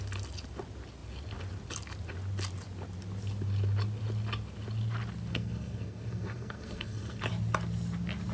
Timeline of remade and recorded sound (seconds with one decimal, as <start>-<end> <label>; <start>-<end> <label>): 0.0-5.3 recorded; 5.3-7.2 remade; 7.2-8.3 recorded